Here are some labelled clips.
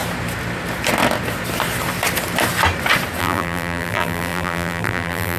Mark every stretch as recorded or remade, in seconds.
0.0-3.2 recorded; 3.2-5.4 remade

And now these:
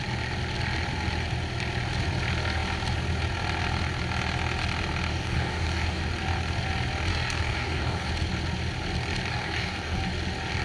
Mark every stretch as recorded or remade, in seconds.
0.0-5.1 recorded; 5.1-6.0 remade; 6.0-7.1 recorded; 7.1-8.1 remade; 8.1-9.3 recorded; 9.3-10.0 remade; 10.0-10.6 recorded

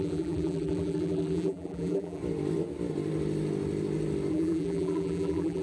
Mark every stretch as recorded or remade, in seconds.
0.0-2.2 remade; 2.2-4.3 recorded; 4.3-5.6 remade

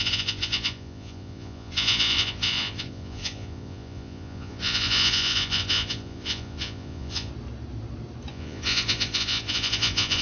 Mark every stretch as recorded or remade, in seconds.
0.0-7.3 remade; 7.3-8.3 recorded; 8.3-10.2 remade

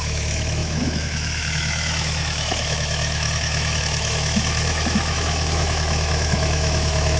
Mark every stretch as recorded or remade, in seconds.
0.0-7.2 remade

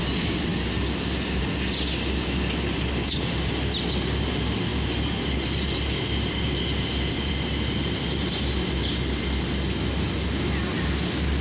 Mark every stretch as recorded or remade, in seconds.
0.0-11.4 recorded

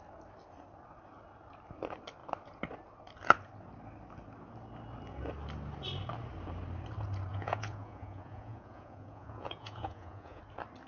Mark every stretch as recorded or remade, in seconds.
0.0-7.3 recorded; 7.3-10.4 remade; 10.4-10.9 recorded

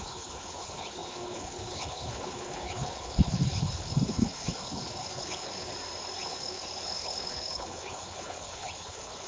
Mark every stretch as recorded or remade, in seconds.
0.0-5.7 remade; 5.7-6.2 recorded; 6.2-9.3 remade